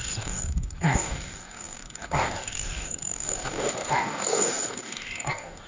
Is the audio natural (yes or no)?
no